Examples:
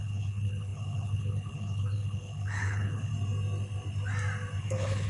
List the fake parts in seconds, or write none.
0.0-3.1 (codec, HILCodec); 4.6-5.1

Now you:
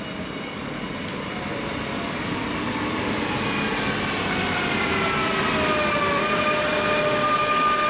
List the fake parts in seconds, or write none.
none